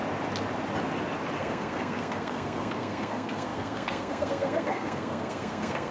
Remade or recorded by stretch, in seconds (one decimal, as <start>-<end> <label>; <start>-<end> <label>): 0.0-1.4 recorded; 1.4-5.9 remade